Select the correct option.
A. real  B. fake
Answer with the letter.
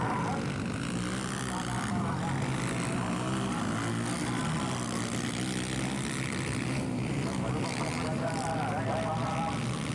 A